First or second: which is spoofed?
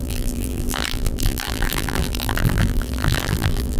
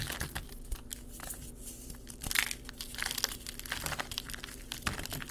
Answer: first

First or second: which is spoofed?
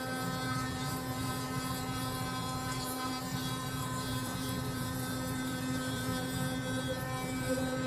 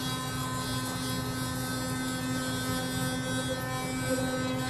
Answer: first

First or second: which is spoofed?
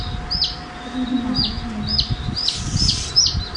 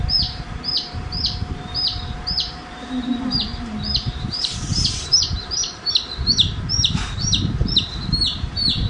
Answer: second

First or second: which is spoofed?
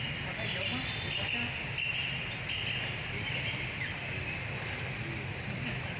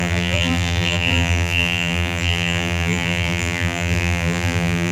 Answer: second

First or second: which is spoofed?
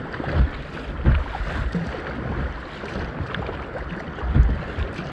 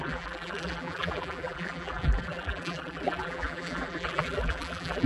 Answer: second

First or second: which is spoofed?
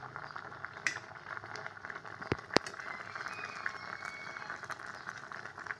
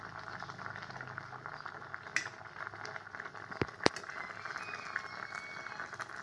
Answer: first